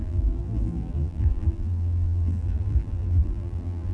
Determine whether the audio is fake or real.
fake